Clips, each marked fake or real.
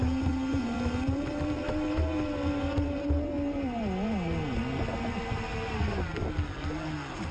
real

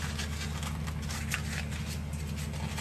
real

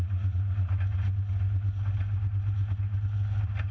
real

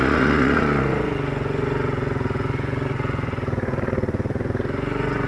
fake